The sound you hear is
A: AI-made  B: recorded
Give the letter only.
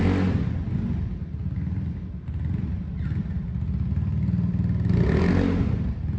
B